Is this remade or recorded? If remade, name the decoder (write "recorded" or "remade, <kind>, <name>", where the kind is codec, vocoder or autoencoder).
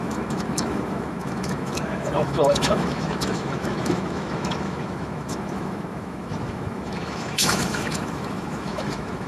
remade, autoencoder, DAC-VAE